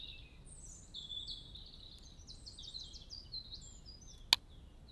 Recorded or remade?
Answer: recorded